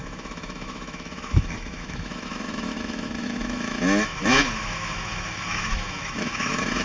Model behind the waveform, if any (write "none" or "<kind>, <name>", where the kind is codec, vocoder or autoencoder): autoencoder, DAC-VAE